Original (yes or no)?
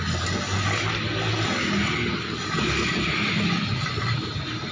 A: yes